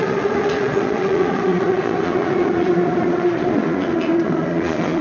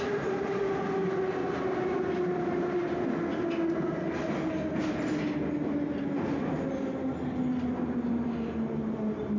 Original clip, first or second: second